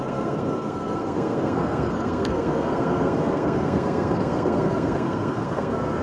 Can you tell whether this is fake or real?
fake